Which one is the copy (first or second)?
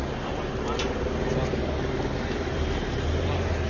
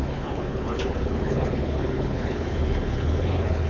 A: second